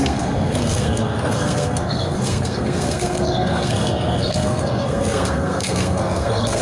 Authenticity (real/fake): fake